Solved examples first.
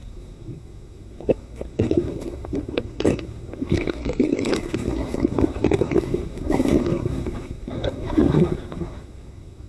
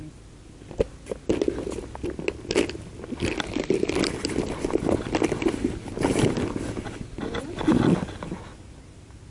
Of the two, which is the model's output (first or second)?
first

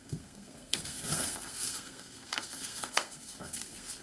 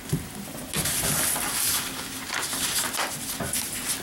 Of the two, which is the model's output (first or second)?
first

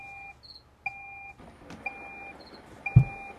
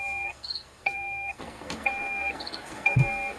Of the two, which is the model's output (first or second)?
second